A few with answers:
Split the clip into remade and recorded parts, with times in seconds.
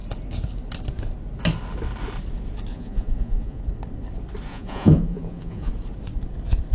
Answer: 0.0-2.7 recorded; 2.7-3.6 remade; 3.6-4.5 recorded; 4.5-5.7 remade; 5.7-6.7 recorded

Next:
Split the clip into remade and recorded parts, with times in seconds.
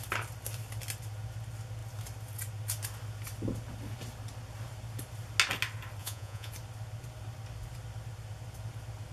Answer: 0.0-6.0 recorded; 6.0-6.5 remade; 6.5-9.1 recorded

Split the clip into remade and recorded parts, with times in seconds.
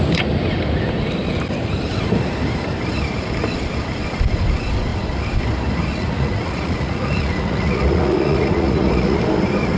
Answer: 0.0-5.9 recorded; 5.9-9.2 remade; 9.2-9.8 recorded